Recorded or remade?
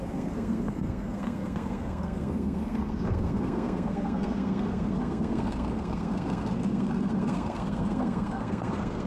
remade